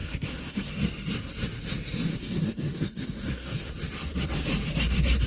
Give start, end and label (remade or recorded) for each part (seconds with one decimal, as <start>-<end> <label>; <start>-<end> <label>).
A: 0.0-0.7 remade; 0.7-2.1 recorded; 2.1-3.7 remade; 3.7-5.3 recorded